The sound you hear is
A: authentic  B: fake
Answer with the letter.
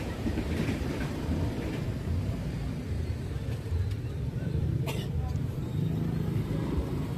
B